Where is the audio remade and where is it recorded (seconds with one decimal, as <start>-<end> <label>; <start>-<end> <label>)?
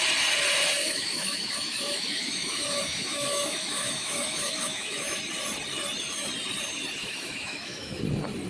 0.0-0.8 recorded; 0.8-5.2 remade; 5.2-7.0 recorded; 7.0-8.0 remade; 8.0-8.5 recorded